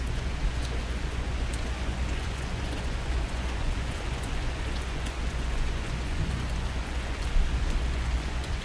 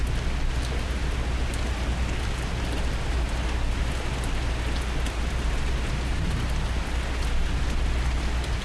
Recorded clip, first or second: second